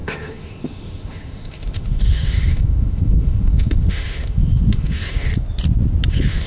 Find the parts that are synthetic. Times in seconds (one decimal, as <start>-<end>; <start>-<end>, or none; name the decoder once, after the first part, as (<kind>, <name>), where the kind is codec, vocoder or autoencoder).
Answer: 0.0-5.3 (autoencoder, DAC-VAE); 6.1-6.5